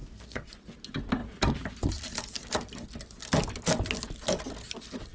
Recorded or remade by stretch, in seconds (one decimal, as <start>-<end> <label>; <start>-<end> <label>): 0.0-0.5 remade; 0.5-5.1 recorded